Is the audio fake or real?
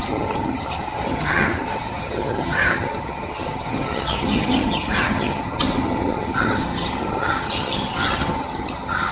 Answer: fake